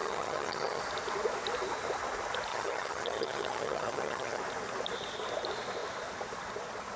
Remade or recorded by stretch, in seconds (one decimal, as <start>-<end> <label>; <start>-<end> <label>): 0.0-0.8 remade; 0.8-2.5 recorded; 2.5-4.4 remade; 4.4-7.0 recorded